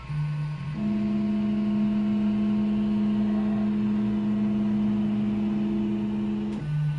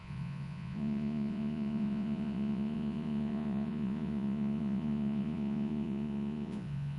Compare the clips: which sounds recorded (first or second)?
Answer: first